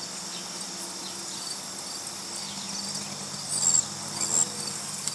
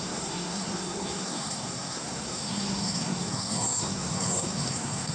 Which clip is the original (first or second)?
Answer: first